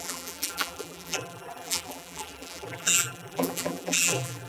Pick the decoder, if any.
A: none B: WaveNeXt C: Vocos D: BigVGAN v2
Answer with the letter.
D